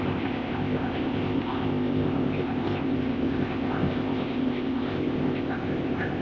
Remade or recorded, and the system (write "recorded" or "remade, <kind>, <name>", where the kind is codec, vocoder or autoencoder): remade, codec, ZipCodec